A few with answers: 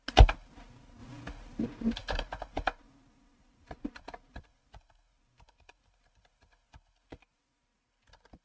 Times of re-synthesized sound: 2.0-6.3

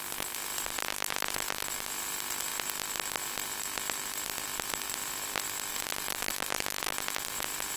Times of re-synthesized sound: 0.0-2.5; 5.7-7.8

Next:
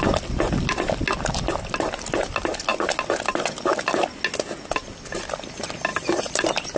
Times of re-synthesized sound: 5.9-6.8